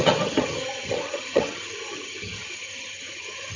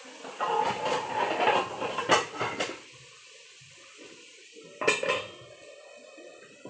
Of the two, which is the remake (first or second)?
first